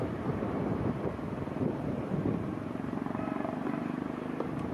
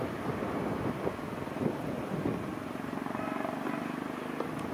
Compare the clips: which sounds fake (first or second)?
first